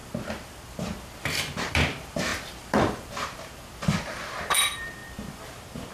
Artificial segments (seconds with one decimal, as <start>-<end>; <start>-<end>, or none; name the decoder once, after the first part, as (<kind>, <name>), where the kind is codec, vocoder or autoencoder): 0.0-5.9 (vocoder, BigVGAN v2)